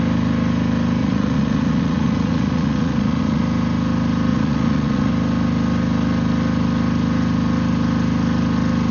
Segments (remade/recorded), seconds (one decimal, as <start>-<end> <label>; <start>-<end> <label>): 0.0-1.0 recorded; 1.0-3.4 remade; 3.4-4.3 recorded; 4.3-5.1 remade; 5.1-8.9 recorded